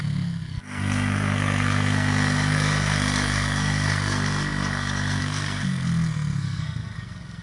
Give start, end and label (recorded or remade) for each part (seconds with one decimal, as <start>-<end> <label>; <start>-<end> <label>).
0.0-7.4 remade